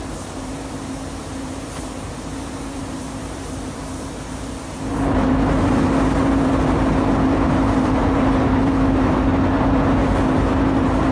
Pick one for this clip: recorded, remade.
remade